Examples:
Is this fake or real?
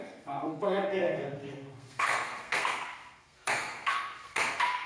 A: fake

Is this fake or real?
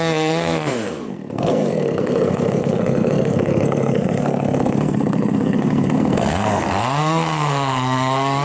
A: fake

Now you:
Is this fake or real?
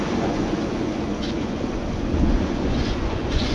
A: fake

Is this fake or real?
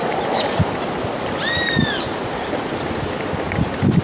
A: real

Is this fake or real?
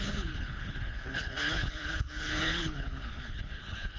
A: fake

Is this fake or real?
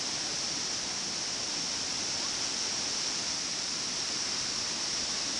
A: real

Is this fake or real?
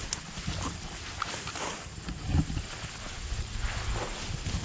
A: real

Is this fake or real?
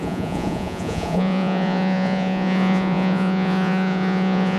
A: fake